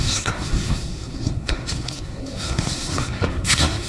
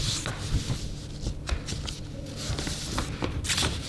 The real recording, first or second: second